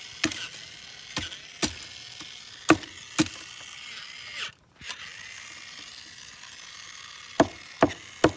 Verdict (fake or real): real